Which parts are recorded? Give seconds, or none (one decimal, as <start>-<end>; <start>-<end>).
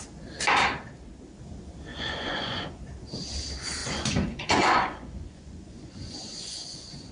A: 0.0-1.9; 2.8-3.8